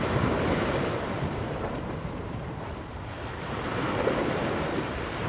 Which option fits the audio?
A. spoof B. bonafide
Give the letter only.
A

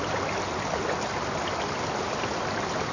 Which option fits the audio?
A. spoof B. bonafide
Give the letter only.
B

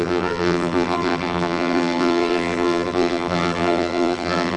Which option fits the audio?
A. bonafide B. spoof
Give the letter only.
B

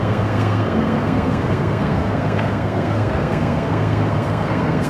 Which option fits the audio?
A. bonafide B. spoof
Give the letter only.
B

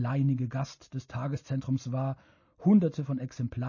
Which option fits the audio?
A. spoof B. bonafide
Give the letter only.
B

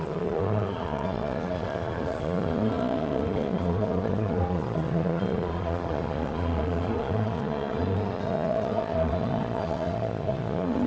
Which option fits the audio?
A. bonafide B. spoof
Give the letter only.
B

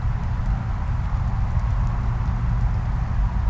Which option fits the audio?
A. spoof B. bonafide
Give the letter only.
B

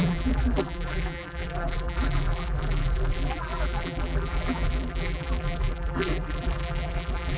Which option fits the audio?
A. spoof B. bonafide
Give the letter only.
A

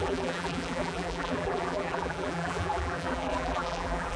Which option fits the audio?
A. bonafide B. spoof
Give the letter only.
B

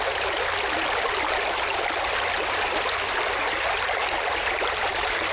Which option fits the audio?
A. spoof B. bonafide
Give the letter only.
B